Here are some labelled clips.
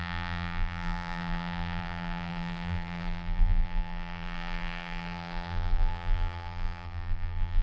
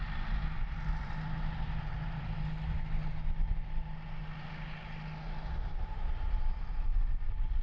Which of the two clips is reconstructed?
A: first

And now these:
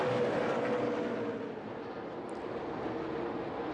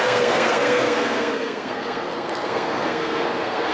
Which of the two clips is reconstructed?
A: second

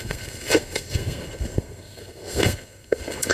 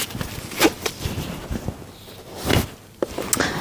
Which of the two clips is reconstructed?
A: first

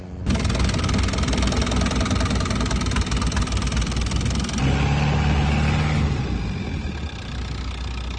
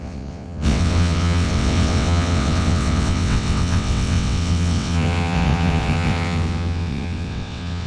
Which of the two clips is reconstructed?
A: second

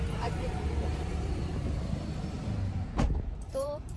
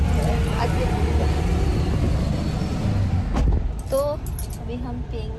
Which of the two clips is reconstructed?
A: first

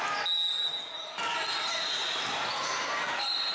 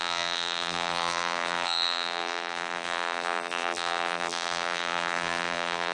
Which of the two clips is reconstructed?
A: second